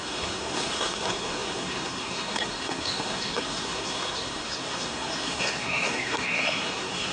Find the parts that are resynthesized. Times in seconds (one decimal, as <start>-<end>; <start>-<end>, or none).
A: 0.0-7.1